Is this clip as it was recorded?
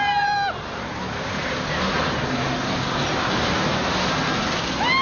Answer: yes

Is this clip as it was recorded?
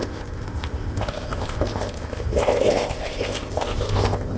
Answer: no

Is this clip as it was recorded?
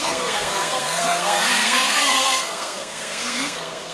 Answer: no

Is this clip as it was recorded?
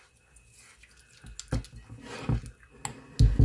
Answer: yes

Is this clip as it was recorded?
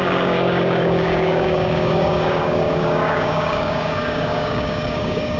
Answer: no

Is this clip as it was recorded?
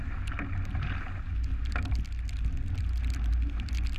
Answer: yes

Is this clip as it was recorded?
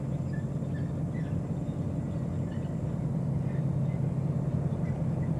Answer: yes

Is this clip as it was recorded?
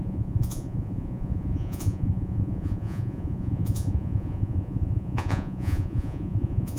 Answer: no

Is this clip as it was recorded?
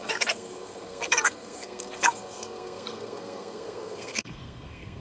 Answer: no